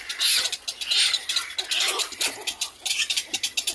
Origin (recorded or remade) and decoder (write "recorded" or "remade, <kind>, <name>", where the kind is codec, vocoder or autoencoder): recorded